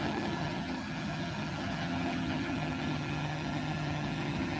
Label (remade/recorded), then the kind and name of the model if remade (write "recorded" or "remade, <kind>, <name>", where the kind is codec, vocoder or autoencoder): remade, vocoder, HiFi-GAN